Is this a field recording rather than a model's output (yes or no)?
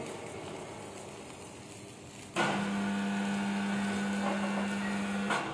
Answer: yes